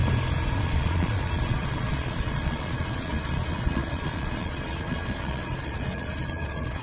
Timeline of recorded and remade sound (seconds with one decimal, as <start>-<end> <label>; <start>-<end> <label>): 0.0-0.6 recorded; 0.6-6.8 remade

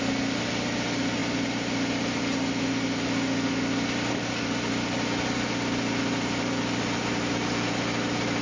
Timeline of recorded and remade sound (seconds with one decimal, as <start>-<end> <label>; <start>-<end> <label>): 0.0-8.4 recorded